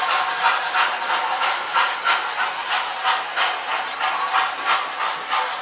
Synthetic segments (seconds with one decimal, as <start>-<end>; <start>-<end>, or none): 1.2-2.1